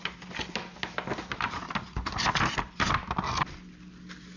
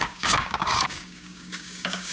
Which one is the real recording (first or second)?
first